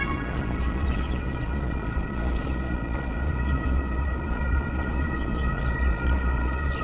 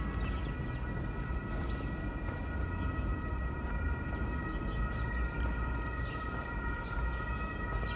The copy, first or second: first